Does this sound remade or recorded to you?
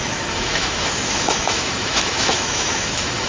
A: remade